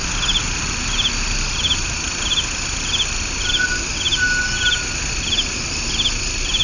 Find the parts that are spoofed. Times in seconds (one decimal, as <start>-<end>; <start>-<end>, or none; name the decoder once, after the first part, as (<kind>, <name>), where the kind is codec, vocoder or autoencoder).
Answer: none